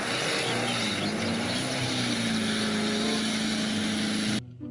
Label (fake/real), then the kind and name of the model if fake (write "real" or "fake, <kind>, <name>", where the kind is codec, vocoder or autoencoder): real